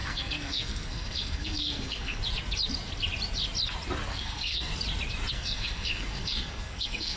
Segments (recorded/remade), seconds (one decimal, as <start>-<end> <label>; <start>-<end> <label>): 0.0-2.2 remade; 2.2-4.1 recorded; 4.1-4.7 remade; 4.7-5.3 recorded; 5.3-7.2 remade